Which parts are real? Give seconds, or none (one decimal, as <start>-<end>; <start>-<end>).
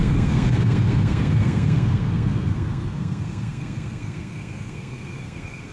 none